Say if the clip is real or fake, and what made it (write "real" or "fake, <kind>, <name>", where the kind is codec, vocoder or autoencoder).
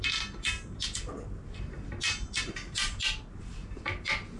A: real